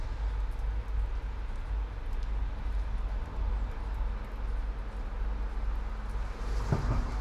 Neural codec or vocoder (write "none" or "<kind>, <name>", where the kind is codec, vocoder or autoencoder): none